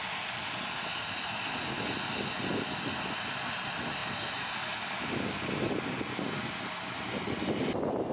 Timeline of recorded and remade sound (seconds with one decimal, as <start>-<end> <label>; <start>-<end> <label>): 0.0-8.1 recorded